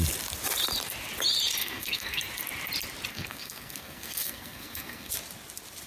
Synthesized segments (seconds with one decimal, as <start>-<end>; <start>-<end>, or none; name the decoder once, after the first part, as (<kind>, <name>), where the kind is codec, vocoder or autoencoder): 1.6-2.2 (codec, SNAC); 3.1-5.1